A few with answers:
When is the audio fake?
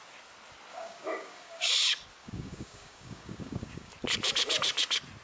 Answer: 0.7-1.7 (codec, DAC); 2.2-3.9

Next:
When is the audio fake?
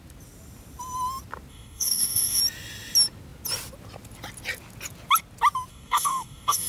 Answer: 1.5-2.4 (codec, DAC); 5.7-6.7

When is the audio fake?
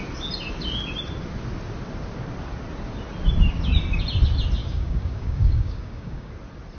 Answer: 4.6-6.3 (codec, DAC)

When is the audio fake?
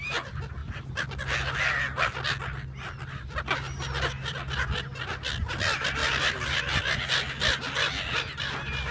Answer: none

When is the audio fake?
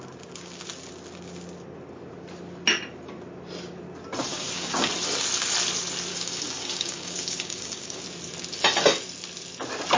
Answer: 4.3-4.9 (codec, DAC); 6.1-8.0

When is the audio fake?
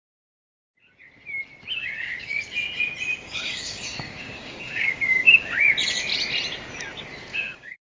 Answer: 1.8-2.4 (codec, DAC); 3.1-5.7; 7.3-7.9